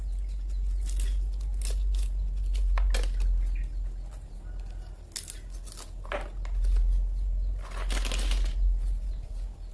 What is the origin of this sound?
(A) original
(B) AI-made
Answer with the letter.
A